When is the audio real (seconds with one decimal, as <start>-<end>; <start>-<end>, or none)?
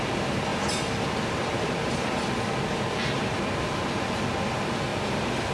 0.0-0.5; 3.8-5.5